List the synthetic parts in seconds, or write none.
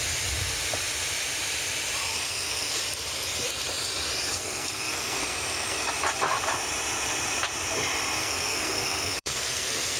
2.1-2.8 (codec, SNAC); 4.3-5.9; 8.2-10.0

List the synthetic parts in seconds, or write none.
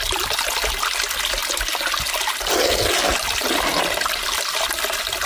none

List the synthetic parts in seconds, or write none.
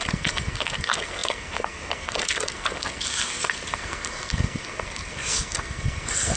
0.0-6.4 (codec, SNAC)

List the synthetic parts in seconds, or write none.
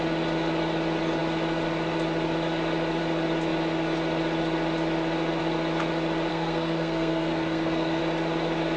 6.3-8.0 (codec, SNAC)